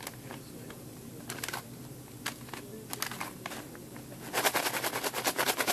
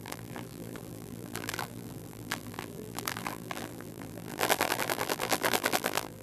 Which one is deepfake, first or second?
second